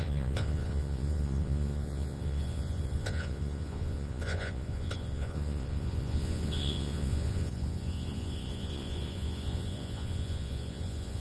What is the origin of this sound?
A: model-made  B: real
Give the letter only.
A